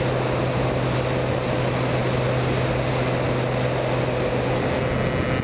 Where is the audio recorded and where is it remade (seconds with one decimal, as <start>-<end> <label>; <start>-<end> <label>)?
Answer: 0.0-5.4 recorded